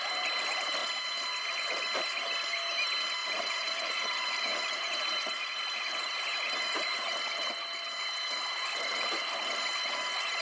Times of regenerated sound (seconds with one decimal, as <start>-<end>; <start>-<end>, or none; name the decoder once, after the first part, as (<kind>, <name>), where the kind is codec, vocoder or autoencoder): 3.2-6.1 (vocoder, Vocos)